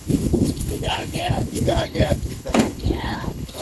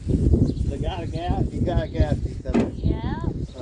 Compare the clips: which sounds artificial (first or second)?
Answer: first